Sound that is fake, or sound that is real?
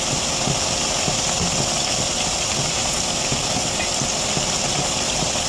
real